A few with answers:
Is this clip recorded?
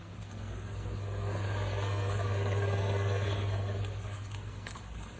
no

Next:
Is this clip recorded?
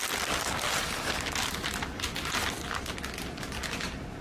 yes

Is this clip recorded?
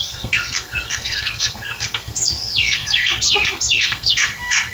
no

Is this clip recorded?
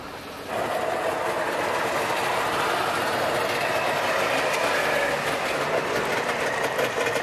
yes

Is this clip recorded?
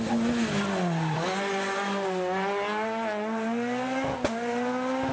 yes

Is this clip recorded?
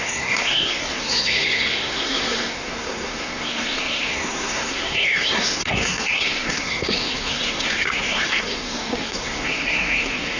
no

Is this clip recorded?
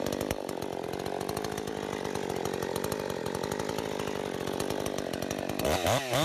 yes